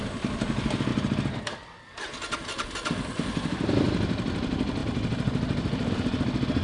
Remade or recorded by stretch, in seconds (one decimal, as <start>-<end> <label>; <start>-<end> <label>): 0.0-0.9 recorded; 0.9-3.5 remade; 3.5-4.8 recorded; 4.8-5.9 remade; 5.9-6.6 recorded